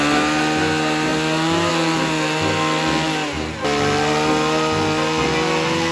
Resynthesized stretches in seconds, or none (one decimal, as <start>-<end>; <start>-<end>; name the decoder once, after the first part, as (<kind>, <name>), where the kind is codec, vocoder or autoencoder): none